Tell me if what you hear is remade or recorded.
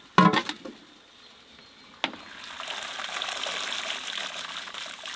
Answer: recorded